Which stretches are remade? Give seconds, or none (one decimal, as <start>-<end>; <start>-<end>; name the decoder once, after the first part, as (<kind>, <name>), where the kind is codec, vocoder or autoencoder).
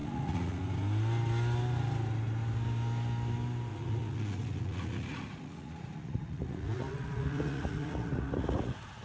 0.0-0.6 (vocoder, Vocos); 3.7-9.0